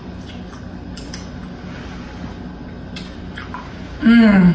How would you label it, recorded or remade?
recorded